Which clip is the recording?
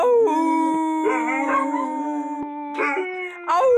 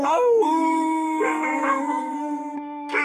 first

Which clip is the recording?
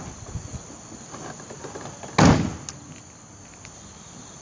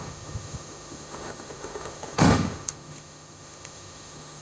first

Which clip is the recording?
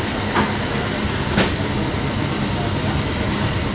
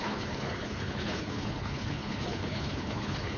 first